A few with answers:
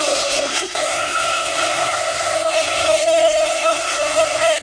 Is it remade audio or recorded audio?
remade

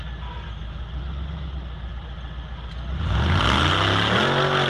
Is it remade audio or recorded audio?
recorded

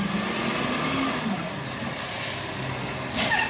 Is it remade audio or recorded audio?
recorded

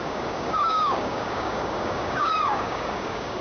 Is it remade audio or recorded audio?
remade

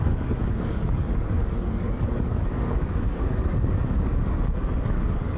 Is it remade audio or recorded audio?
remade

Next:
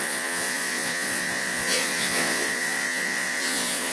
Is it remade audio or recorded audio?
remade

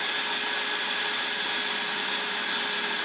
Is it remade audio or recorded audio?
recorded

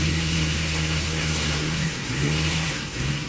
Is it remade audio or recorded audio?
remade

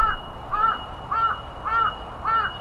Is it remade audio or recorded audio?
recorded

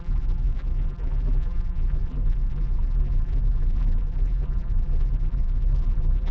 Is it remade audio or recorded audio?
remade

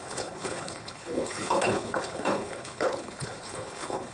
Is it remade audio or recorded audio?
remade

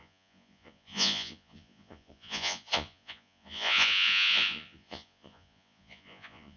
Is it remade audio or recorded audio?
remade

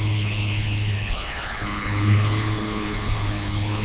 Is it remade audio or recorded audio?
remade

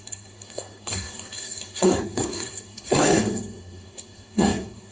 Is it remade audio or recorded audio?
remade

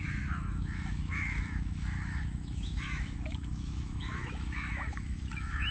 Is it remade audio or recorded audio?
remade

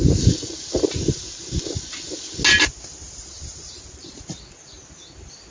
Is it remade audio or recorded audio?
recorded